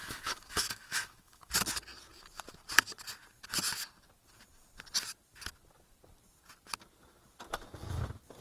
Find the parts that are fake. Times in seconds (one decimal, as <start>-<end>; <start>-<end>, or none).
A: 0.0-1.5